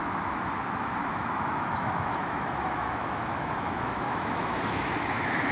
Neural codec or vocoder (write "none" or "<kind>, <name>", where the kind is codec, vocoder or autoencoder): autoencoder, DAC-VAE